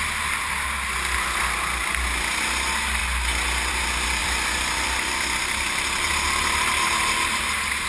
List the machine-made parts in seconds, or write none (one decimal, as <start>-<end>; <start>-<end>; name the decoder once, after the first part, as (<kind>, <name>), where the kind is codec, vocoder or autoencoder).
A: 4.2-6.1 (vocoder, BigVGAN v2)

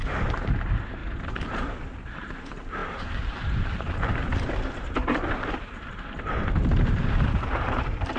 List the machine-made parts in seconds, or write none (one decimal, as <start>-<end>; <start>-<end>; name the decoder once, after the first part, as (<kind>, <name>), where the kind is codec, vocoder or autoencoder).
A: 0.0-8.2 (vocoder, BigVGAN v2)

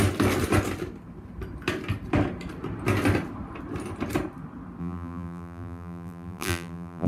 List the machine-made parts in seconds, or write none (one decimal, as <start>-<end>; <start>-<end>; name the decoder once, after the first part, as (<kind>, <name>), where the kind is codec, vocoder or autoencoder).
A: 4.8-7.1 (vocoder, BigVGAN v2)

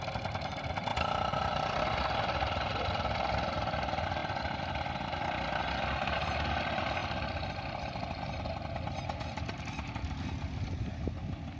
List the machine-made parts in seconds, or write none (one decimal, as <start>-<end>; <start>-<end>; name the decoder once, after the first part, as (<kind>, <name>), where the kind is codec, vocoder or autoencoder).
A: 0.9-1.8 (vocoder, BigVGAN v2)